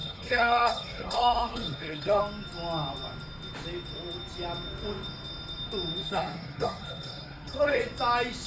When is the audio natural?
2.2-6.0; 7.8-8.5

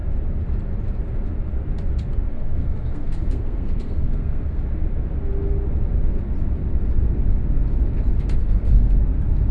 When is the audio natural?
0.0-2.3; 4.6-8.4; 9.0-9.5

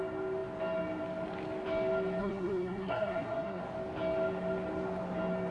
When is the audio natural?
0.0-2.2; 3.6-5.5

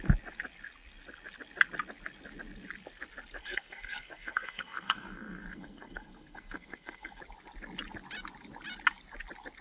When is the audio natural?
0.0-3.4; 7.2-9.6

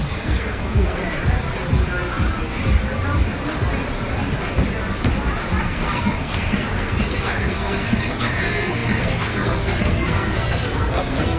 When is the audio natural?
1.0-5.6

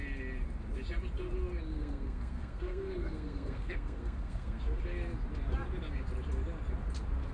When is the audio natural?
0.0-1.7; 4.8-7.3

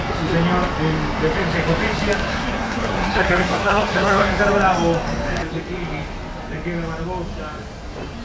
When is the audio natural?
0.0-2.3; 4.4-8.2

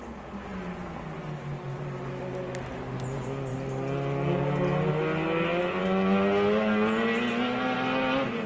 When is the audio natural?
0.0-8.5